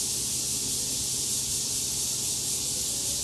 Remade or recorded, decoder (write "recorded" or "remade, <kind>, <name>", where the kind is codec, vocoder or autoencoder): recorded